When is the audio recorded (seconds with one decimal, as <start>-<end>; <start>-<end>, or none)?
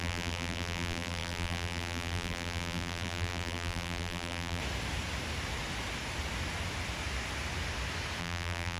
4.6-8.2